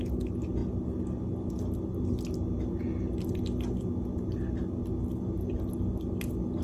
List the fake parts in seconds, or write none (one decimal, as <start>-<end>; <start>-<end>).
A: none